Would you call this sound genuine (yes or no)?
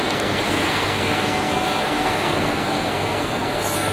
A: no